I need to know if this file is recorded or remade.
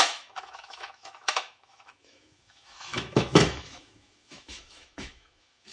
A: remade